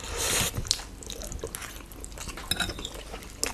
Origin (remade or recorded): recorded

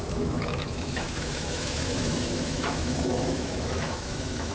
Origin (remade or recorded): remade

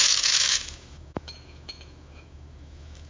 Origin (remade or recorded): remade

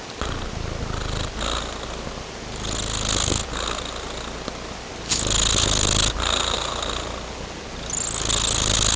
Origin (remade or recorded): recorded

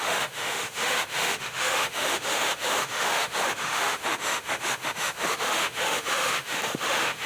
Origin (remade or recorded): remade